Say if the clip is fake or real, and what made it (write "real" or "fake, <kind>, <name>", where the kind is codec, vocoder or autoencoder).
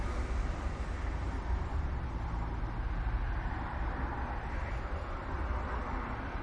real